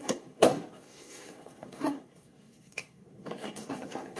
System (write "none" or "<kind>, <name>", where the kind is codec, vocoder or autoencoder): codec, SNAC